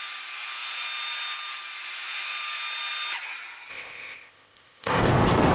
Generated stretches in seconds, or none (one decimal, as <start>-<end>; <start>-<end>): 3.7-5.0